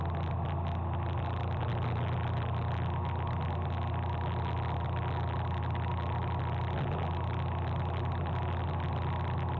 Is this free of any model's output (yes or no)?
yes